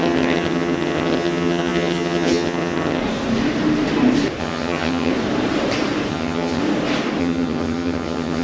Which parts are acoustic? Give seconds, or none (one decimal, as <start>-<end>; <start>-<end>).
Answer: 3.0-4.4; 5.1-6.1; 6.6-7.2